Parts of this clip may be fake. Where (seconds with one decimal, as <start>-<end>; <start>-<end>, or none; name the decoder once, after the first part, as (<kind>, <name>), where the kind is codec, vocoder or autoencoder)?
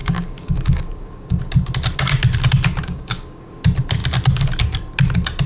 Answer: 0.0-1.4 (codec, DAC); 2.8-3.5